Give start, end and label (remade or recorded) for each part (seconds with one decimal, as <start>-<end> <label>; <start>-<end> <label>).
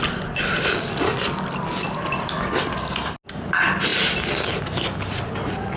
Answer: 0.0-5.8 recorded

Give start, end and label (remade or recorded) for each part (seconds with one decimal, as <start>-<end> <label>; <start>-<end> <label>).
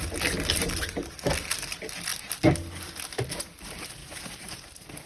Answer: 0.0-4.0 recorded; 4.0-5.1 remade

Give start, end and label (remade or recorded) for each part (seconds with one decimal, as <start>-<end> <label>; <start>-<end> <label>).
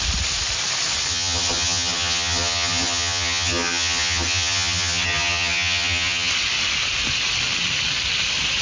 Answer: 0.0-1.1 recorded; 1.1-6.3 remade; 6.3-8.6 recorded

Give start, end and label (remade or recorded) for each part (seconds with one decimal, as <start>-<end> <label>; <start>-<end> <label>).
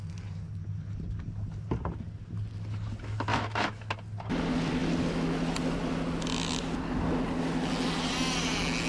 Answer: 0.0-3.3 recorded; 3.3-3.9 remade; 3.9-8.9 recorded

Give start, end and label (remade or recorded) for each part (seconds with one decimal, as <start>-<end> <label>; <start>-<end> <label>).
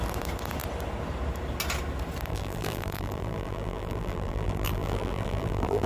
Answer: 0.0-2.3 recorded; 2.3-5.9 remade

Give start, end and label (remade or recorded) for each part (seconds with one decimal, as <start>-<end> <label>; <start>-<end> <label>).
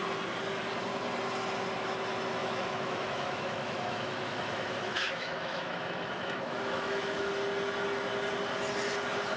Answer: 0.0-2.4 recorded; 2.4-7.3 remade; 7.3-9.4 recorded